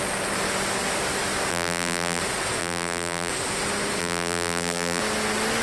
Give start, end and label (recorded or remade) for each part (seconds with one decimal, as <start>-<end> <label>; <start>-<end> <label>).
0.0-1.5 recorded; 1.5-2.2 remade; 2.2-2.6 recorded; 2.6-3.3 remade; 3.3-4.0 recorded; 4.0-5.0 remade; 5.0-5.6 recorded